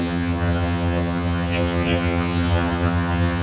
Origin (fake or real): fake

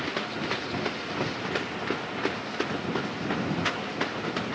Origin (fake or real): real